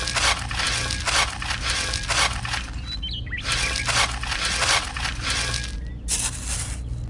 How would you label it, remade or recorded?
recorded